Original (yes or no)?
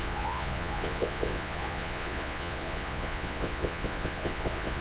no